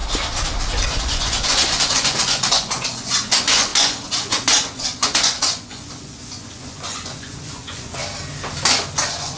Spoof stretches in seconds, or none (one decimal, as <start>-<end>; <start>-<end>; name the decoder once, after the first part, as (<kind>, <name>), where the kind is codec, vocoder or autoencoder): 1.0-8.0 (vocoder, Vocos); 8.7-9.4